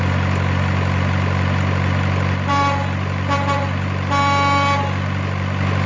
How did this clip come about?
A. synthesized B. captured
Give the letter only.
B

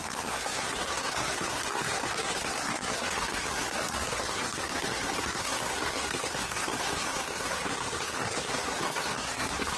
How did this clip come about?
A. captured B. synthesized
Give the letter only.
B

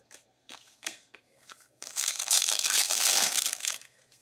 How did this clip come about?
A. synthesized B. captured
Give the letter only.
A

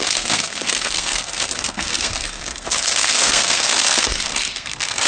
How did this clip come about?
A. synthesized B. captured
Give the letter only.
A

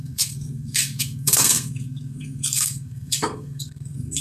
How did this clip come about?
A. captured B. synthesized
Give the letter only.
B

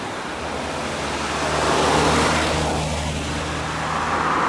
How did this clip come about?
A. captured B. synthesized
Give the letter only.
A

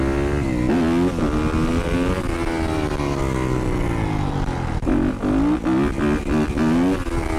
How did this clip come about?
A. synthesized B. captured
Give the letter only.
B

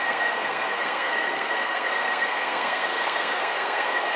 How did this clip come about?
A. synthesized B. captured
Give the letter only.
A